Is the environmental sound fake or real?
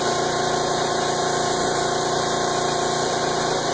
real